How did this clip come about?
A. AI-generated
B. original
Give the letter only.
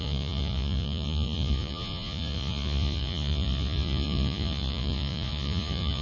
A